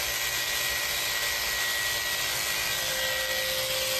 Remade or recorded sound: recorded